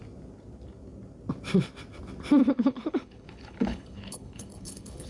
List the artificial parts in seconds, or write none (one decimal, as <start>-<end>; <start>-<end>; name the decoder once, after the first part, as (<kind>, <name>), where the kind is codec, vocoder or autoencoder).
2.4-5.1 (codec, HILCodec)